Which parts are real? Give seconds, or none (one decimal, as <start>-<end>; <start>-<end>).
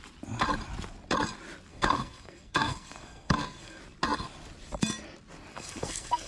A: 0.0-1.7; 3.8-5.5